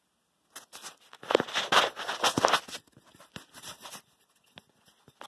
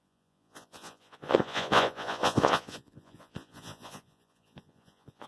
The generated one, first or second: second